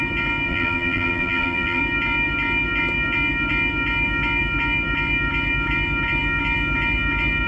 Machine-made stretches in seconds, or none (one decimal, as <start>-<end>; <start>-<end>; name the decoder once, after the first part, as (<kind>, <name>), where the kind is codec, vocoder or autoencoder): 0.5-1.8 (vocoder, BigVGAN v2)